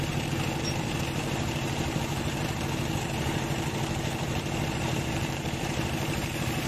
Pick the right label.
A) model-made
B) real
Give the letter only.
A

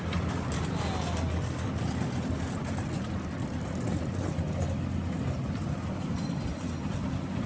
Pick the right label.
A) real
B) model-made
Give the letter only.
A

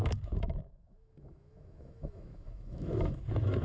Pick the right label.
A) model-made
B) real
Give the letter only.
A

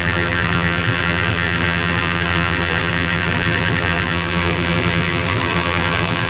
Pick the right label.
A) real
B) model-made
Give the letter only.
B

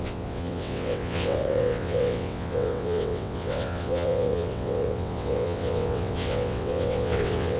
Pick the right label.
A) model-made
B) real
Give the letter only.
A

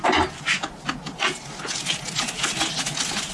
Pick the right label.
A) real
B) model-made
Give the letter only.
A